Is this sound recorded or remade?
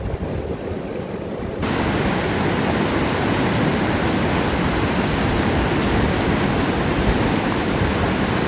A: recorded